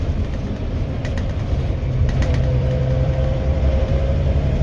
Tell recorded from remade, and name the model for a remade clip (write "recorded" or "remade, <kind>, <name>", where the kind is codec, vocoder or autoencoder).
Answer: remade, vocoder, BigVGAN v2